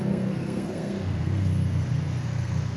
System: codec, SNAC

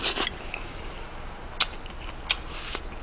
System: none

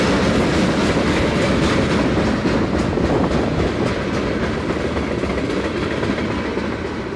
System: none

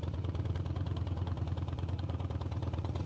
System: vocoder, Vocos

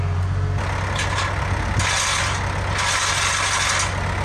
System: none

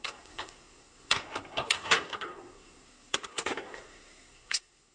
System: codec, SNAC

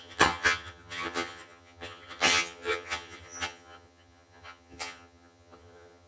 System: vocoder, HiFi-GAN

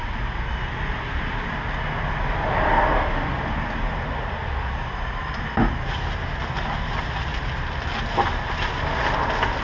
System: none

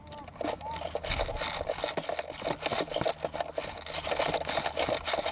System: none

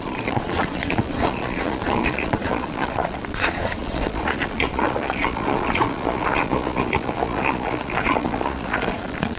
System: vocoder, Vocos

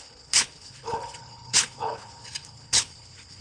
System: codec, HILCodec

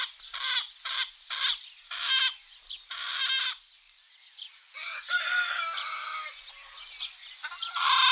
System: none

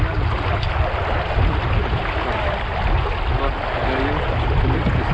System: none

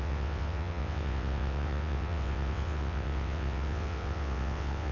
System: vocoder, WaveNeXt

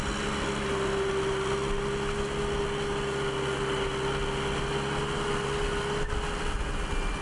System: none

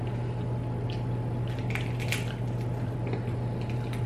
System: none